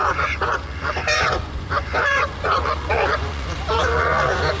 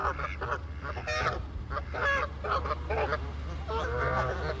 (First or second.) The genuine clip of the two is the second